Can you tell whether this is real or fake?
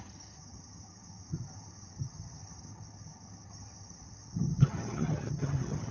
fake